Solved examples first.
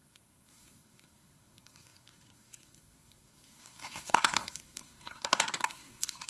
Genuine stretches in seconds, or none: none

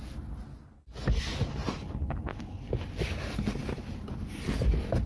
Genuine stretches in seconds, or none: 0.0-5.1

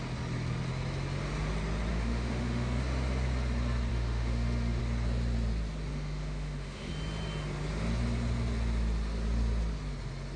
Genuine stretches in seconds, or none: 0.0-1.9; 2.8-3.9; 4.8-5.9; 6.9-10.4

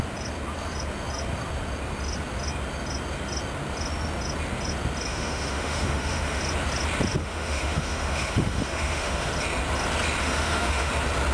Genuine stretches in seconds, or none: 0.0-5.1; 6.4-7.2; 9.3-10.2; 10.9-11.3

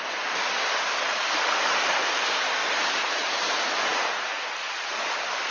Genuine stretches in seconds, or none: 0.0-5.5